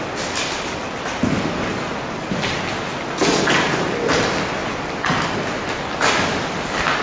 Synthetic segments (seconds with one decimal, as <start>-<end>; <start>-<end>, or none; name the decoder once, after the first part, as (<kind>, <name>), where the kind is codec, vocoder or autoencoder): none